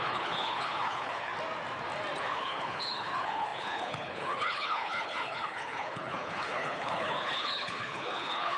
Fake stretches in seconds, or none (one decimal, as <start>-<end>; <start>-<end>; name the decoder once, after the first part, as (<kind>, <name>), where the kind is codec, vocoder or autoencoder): 0.0-1.3 (codec, HILCodec); 2.2-8.6